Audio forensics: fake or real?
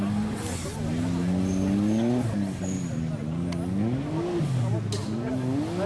real